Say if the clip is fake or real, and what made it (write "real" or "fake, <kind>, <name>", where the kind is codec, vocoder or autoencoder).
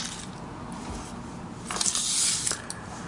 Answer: real